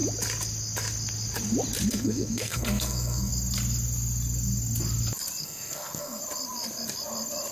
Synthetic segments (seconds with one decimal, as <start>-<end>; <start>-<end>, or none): 1.9-3.3; 5.4-6.2